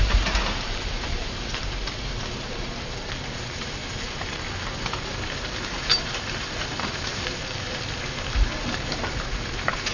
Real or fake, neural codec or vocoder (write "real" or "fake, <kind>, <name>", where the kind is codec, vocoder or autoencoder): fake, vocoder, BigVGAN v2